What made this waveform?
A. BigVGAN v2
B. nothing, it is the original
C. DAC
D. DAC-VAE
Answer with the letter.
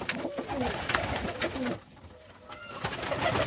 B